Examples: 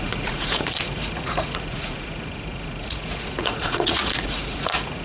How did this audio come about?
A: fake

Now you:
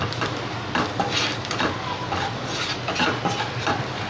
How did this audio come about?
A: real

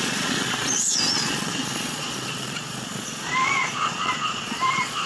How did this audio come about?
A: fake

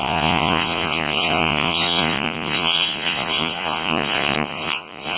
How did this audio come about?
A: fake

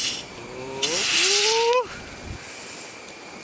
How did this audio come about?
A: real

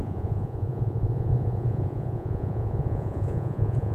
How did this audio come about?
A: fake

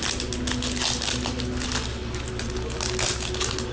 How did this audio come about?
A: real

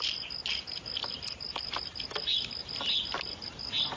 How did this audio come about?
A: real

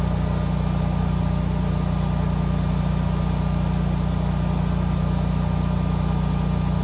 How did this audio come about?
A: real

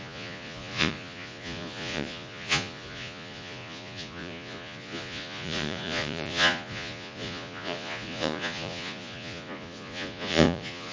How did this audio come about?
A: fake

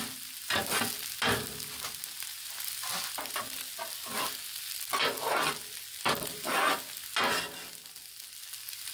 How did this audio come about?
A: real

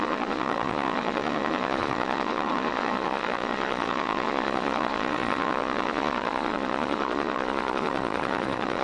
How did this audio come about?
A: fake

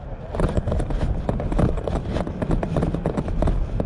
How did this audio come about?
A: real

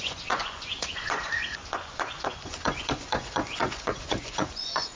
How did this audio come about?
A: fake